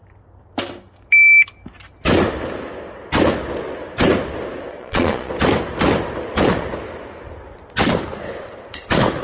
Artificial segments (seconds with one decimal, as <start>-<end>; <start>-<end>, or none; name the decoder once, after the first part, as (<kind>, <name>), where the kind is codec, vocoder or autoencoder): 4.7-5.3 (vocoder, Vocos)